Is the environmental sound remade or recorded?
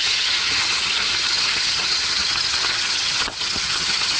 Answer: remade